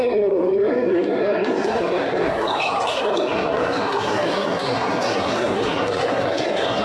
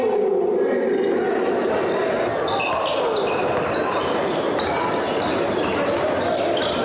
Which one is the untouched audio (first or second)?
second